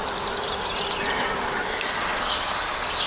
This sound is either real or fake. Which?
real